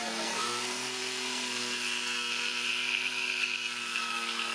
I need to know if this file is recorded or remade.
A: remade